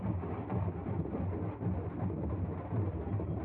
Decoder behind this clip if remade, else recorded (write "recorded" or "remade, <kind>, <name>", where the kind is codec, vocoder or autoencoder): recorded